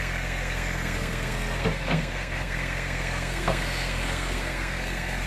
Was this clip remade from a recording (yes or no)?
yes